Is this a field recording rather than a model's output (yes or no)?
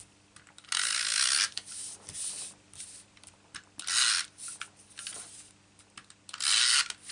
yes